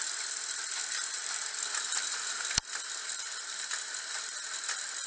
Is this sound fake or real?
real